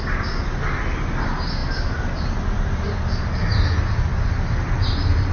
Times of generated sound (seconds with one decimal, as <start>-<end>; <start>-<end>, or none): none